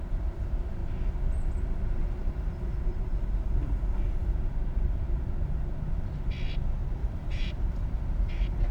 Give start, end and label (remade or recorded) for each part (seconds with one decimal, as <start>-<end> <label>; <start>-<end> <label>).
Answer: 0.0-2.9 recorded; 2.9-3.6 remade; 3.6-7.0 recorded; 7.0-8.7 remade